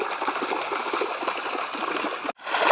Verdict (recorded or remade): recorded